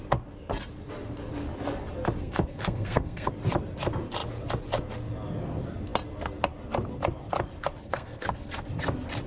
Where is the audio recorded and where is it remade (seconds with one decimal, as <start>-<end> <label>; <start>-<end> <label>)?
0.0-2.2 recorded; 2.2-3.3 remade; 3.3-7.8 recorded; 7.8-8.7 remade; 8.7-9.3 recorded